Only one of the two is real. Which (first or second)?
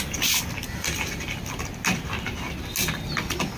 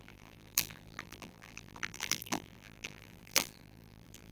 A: first